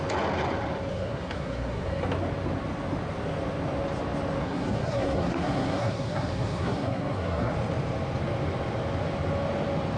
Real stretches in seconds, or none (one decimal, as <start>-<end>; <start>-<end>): 0.0-0.9; 2.0-4.4; 7.5-10.0